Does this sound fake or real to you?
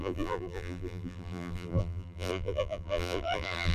fake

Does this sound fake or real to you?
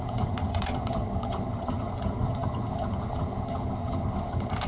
fake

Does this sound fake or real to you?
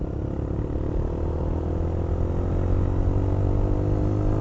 real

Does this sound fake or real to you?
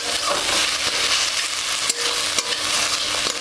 real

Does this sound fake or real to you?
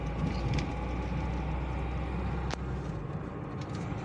real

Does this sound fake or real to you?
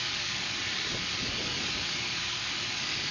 fake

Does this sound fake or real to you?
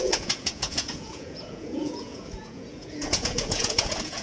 fake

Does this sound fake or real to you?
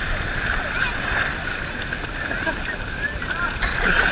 real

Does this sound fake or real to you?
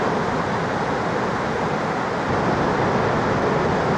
real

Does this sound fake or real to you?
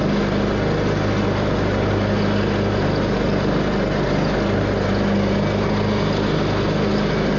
real